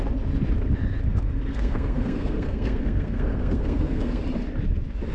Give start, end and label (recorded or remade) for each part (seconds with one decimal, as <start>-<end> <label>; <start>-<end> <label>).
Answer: 0.0-1.1 recorded; 1.1-4.2 remade; 4.2-5.1 recorded